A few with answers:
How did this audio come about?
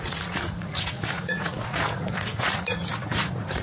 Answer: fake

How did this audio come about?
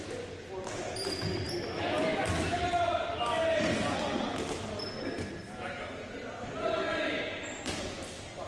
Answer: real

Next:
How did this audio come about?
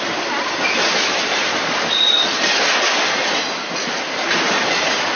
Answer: real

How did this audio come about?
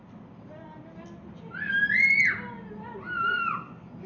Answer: real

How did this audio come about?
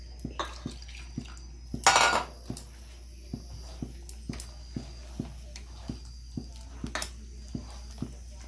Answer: real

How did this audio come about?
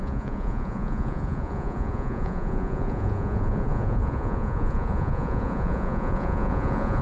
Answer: fake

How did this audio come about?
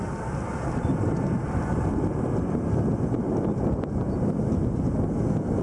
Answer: real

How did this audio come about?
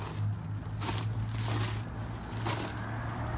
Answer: real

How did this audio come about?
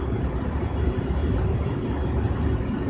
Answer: real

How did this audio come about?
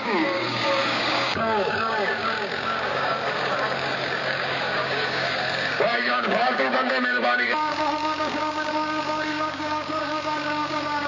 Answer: fake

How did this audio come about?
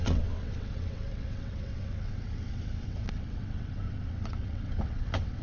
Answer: fake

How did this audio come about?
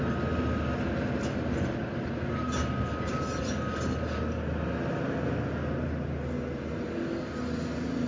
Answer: real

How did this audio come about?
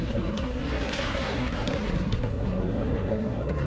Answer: fake